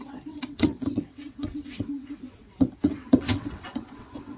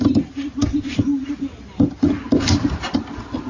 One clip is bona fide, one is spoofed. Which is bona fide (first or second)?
second